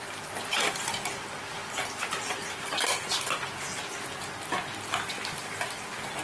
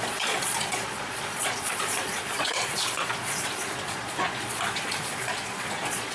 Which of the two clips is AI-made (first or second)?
second